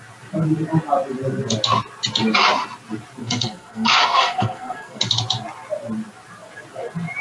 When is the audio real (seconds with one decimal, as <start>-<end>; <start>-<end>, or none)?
0.0-3.2; 5.0-7.2